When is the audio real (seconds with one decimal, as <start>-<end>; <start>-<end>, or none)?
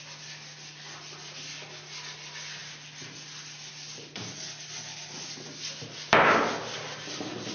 0.0-7.5